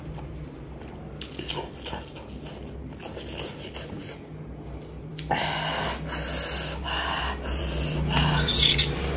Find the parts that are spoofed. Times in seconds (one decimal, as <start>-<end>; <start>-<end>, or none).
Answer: none